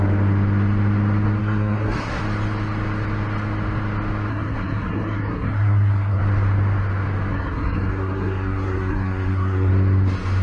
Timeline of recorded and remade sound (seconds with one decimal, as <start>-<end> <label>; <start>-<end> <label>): 0.0-1.4 recorded; 1.4-2.2 remade; 2.2-4.3 recorded; 4.3-6.2 remade; 6.2-7.3 recorded; 7.3-9.7 remade; 9.7-10.4 recorded